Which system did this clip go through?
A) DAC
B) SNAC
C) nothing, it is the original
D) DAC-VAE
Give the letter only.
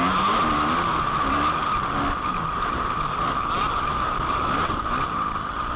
C